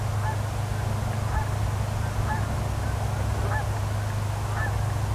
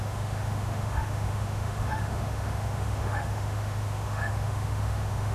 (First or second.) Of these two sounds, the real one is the first